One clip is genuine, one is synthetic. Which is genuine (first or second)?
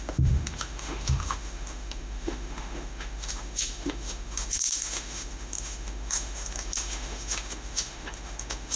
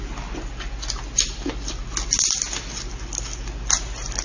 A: second